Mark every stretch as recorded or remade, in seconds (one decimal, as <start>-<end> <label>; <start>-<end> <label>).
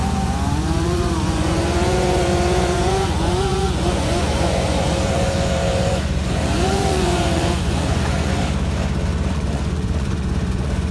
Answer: 0.0-8.4 remade; 8.4-9.3 recorded; 9.3-10.9 remade